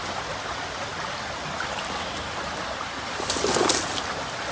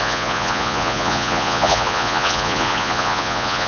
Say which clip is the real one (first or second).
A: first